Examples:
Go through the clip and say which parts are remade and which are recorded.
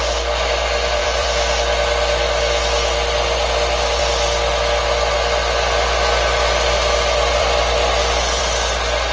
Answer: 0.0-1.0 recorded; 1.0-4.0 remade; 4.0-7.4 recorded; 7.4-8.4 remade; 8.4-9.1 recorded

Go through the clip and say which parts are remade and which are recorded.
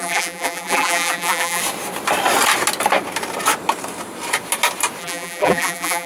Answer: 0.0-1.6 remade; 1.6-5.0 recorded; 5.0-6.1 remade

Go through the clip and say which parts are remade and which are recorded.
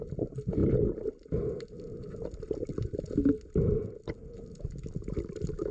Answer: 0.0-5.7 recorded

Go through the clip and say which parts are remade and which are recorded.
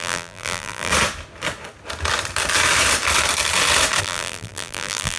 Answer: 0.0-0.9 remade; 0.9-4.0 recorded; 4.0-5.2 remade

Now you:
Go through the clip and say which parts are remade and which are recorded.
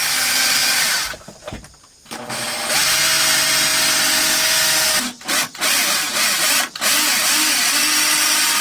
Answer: 0.0-8.6 recorded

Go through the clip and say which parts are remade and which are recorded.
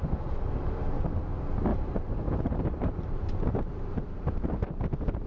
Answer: 0.0-1.7 recorded; 1.7-5.3 remade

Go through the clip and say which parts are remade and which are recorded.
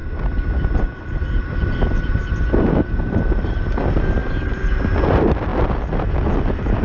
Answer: 0.0-0.8 recorded; 0.8-5.5 remade; 5.5-6.3 recorded; 6.3-6.8 remade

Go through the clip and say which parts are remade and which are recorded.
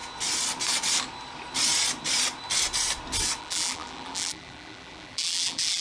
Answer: 0.0-3.4 recorded; 3.4-5.8 remade